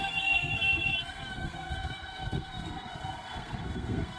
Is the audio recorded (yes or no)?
no